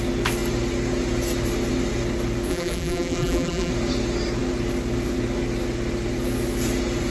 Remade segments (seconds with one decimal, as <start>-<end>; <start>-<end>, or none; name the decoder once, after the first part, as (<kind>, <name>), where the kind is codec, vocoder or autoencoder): 2.5-3.7 (vocoder, BigVGAN v2)